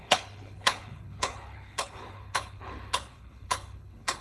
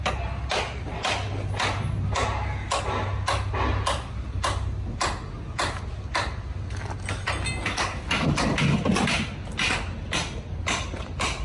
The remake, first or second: first